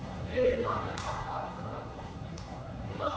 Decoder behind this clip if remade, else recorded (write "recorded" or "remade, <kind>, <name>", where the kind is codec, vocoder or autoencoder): remade, codec, SNAC